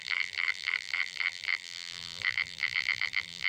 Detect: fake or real fake